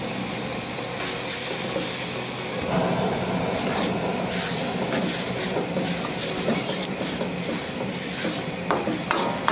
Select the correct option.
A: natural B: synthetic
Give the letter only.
A